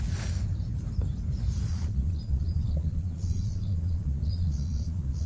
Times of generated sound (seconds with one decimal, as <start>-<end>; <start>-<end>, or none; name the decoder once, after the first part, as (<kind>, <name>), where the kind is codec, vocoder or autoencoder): 1.7-5.3 (vocoder, Vocos)